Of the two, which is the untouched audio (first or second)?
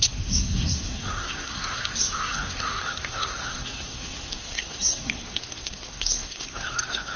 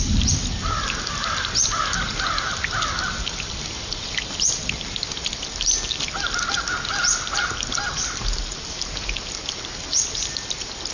second